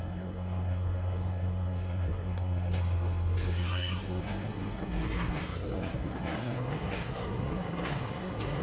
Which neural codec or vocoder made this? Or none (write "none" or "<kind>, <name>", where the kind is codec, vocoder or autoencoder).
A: codec, SNAC